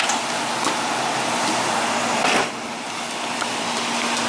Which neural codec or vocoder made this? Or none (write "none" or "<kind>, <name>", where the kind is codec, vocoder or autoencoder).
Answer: none